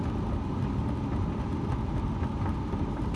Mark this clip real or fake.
real